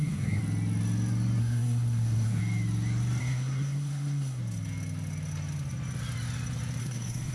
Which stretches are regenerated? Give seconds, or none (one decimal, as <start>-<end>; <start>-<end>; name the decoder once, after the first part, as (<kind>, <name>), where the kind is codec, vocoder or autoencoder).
0.0-0.4 (codec, SNAC); 1.4-2.4; 3.2-4.4; 6.8-7.3